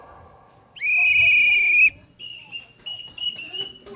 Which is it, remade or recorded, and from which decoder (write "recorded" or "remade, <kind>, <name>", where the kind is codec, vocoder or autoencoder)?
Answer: recorded